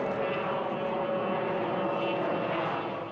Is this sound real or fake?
real